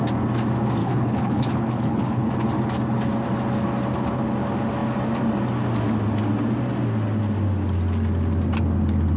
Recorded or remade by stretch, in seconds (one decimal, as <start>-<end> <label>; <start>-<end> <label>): 0.0-0.8 recorded; 0.8-2.3 remade; 2.3-9.2 recorded